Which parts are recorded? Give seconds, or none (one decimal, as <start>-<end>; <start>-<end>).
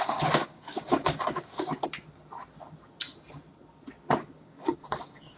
1.8-4.2